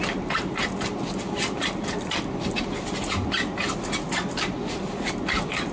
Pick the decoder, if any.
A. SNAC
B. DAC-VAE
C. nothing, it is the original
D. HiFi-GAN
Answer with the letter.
C